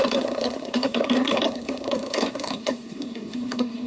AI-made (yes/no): yes